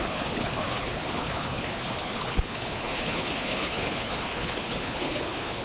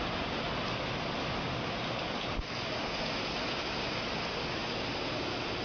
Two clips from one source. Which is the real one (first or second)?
second